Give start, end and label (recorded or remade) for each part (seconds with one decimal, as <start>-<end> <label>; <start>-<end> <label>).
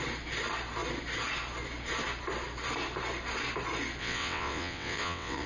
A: 0.0-4.0 recorded; 4.0-5.5 remade